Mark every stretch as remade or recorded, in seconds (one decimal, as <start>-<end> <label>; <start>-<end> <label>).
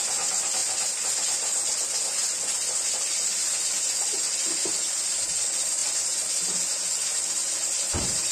0.0-8.3 recorded